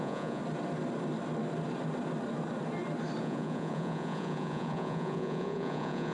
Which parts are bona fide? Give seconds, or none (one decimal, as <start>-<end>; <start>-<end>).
0.4-3.2